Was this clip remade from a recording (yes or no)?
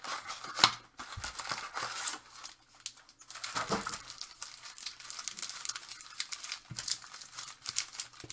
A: no